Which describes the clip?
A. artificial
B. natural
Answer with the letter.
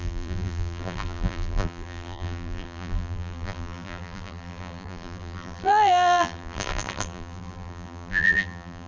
A